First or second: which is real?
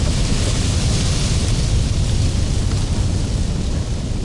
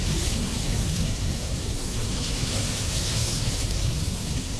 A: first